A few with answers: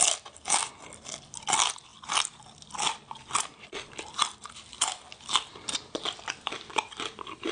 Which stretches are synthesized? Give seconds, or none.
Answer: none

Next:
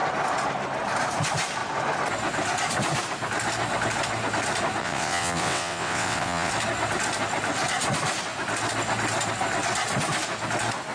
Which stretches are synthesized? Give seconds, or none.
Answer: 4.8-6.5 (vocoder, WaveNeXt)

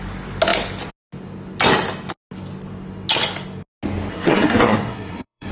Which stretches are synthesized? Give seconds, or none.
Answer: 4.1-5.5 (codec, SNAC)

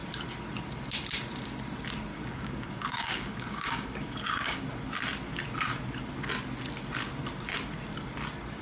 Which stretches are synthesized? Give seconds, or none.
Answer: 2.1-4.6 (codec, DAC)

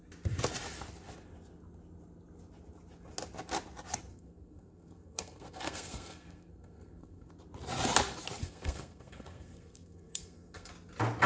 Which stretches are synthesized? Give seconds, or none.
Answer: 4.1-7.3 (codec, SNAC); 8.4-10.7

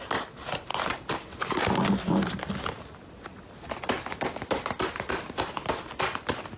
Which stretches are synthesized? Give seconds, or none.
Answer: none

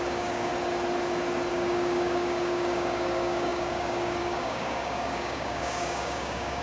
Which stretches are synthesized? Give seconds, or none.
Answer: 0.0-0.5 (codec, DAC); 1.5-6.6

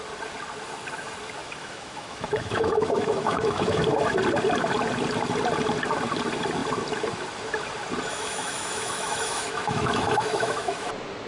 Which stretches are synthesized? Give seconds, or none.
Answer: 1.4-3.8 (autoencoder, DAC-VAE); 8.1-10.9